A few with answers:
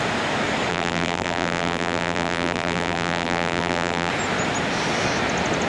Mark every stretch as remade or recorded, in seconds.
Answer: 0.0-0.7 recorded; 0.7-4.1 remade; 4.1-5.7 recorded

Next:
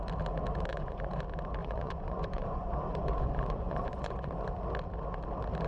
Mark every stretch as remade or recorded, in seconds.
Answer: 0.0-0.7 recorded; 0.7-1.2 remade; 1.2-1.6 recorded; 1.6-4.5 remade; 4.5-5.7 recorded

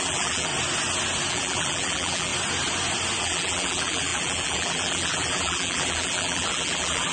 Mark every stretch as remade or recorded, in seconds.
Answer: 0.0-0.5 remade; 0.5-1.3 recorded; 1.3-2.3 remade; 2.3-3.2 recorded; 3.2-7.1 remade

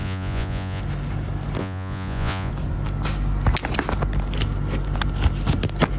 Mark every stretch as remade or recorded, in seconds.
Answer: 0.0-0.8 remade; 0.8-1.6 recorded; 1.6-2.5 remade; 2.5-6.0 recorded

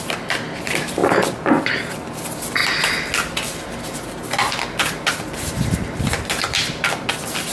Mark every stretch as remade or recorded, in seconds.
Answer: 0.0-7.5 recorded